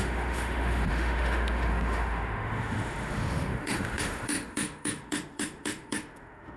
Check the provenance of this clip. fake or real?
fake